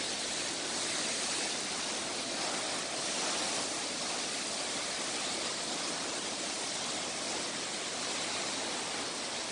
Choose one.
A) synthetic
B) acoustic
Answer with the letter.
B